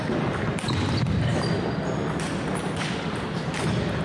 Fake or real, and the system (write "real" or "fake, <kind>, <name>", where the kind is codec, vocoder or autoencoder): real